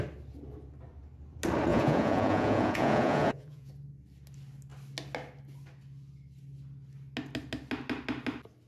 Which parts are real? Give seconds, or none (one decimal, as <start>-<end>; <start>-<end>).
0.0-1.7; 3.7-8.7